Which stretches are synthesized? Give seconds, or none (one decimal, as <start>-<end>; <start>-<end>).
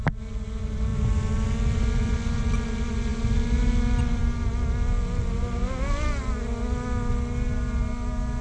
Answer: none